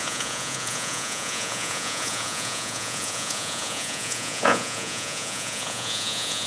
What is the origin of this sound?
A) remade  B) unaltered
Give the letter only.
A